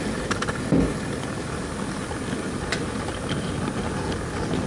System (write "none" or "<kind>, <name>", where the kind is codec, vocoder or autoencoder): none